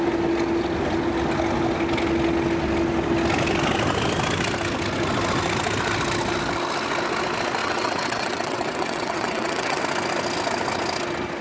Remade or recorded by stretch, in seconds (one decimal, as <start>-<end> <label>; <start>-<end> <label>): 0.0-7.6 recorded; 7.6-9.8 remade; 9.8-11.4 recorded